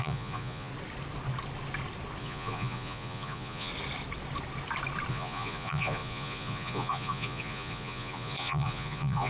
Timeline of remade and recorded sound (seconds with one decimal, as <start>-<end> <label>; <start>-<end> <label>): 0.0-0.7 remade; 0.7-2.2 recorded; 2.2-3.7 remade; 3.7-5.1 recorded; 5.1-9.3 remade